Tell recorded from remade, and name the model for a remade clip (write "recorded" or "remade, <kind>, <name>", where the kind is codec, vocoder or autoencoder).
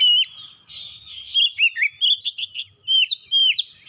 recorded